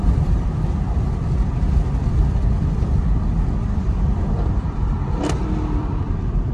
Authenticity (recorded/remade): remade